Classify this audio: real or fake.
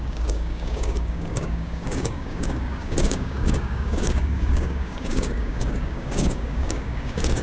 fake